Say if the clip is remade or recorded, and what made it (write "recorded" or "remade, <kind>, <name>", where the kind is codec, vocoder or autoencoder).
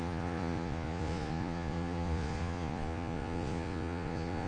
remade, vocoder, Vocos